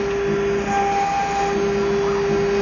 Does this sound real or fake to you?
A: real